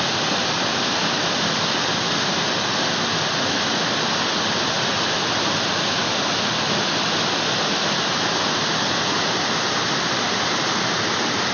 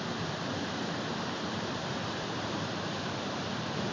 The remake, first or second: second